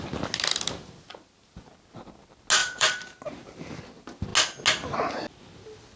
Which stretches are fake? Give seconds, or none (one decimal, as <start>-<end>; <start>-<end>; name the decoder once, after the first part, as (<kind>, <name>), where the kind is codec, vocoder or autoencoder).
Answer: 2.6-3.8 (vocoder, BigVGAN v2)